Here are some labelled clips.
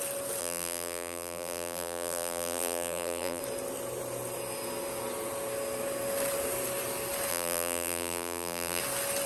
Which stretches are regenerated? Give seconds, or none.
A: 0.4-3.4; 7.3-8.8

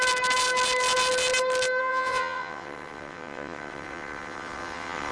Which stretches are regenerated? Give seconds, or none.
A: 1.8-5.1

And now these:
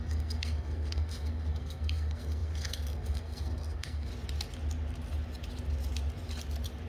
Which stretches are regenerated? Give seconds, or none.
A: 0.0-4.1